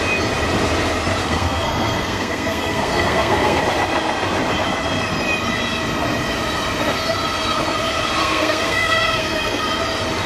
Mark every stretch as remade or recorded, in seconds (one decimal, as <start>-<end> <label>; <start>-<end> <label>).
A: 0.0-1.2 recorded; 1.2-3.6 remade; 3.6-8.2 recorded; 8.2-9.8 remade; 9.8-10.3 recorded

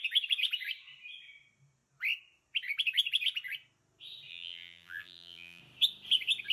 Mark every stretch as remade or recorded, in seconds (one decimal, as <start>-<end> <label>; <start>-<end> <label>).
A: 0.0-4.3 recorded; 4.3-5.6 remade; 5.6-6.5 recorded

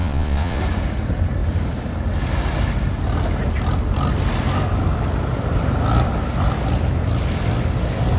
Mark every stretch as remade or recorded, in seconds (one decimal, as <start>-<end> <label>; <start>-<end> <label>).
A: 0.0-0.6 remade; 0.6-8.2 recorded